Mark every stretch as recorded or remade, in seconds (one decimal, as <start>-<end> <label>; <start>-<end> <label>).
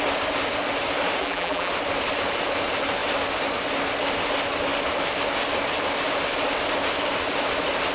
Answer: 0.0-1.2 recorded; 1.2-1.7 remade; 1.7-7.9 recorded